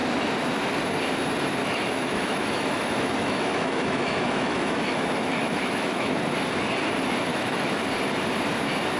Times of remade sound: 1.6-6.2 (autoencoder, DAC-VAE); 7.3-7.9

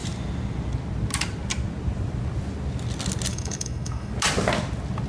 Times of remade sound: 3.3-4.1 (autoencoder, DAC-VAE)

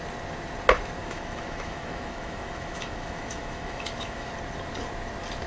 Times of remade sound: 1.0-4.3 (autoencoder, DAC-VAE)